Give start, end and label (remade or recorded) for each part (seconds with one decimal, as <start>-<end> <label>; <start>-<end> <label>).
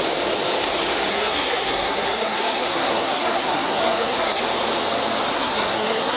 0.0-1.1 recorded; 1.1-4.4 remade; 4.4-5.3 recorded; 5.3-6.2 remade